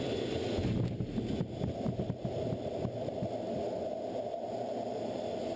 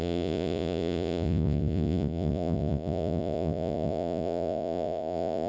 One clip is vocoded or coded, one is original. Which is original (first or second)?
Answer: first